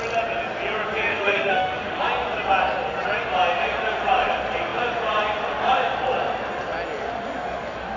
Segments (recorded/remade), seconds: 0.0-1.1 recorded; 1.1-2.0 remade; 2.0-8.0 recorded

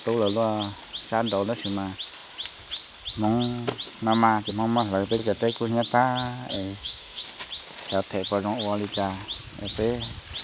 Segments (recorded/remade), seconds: 0.0-5.2 recorded; 5.2-5.7 remade; 5.7-6.5 recorded; 6.5-7.2 remade; 7.2-10.4 recorded

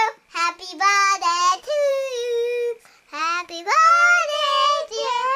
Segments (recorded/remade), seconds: 0.0-1.4 recorded; 1.4-1.9 remade; 1.9-3.2 recorded; 3.2-3.9 remade; 3.9-5.4 recorded

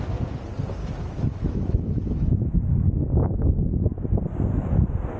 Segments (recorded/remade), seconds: 0.0-0.8 recorded; 0.8-3.6 remade; 3.6-5.2 recorded

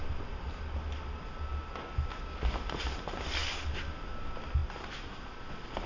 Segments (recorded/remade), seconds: 0.0-5.9 recorded

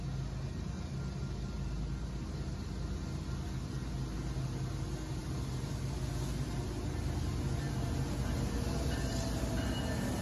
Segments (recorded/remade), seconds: 0.0-10.2 recorded

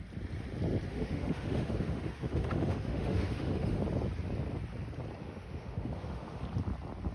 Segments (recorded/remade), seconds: 0.0-0.9 recorded; 0.9-3.8 remade; 3.8-5.2 recorded; 5.2-6.4 remade; 6.4-7.1 recorded